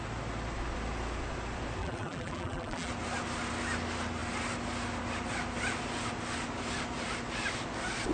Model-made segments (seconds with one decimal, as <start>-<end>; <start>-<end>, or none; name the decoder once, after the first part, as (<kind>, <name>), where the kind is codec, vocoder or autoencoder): 1.8-2.9 (vocoder, BigVGAN v2)